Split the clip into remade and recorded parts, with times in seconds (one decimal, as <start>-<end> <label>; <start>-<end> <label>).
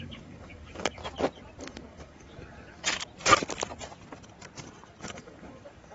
0.0-1.0 remade; 1.0-1.6 recorded; 1.6-2.9 remade; 2.9-5.0 recorded; 5.0-5.9 remade